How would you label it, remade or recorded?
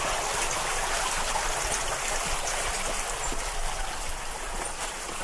remade